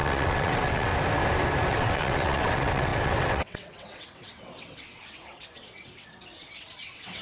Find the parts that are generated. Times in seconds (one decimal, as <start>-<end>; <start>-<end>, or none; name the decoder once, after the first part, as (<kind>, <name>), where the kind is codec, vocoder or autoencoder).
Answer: 0.0-0.9 (vocoder, WaveNeXt); 1.7-7.2